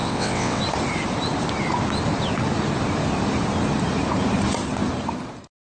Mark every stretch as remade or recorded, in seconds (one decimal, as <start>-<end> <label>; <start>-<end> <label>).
0.0-0.6 remade; 0.6-5.7 recorded